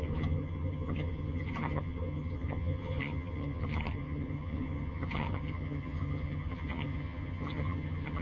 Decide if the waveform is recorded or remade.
remade